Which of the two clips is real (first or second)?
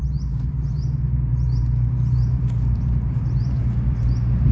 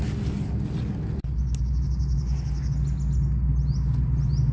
second